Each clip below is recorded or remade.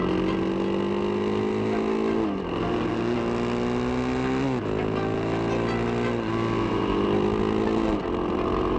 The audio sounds recorded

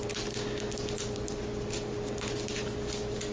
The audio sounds recorded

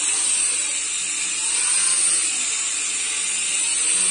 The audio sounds recorded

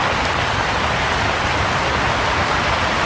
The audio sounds recorded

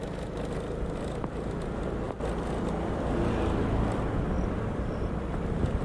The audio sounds recorded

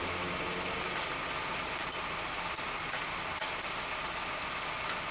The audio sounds recorded